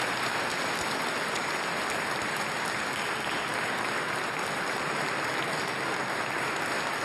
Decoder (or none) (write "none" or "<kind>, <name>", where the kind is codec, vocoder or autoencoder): none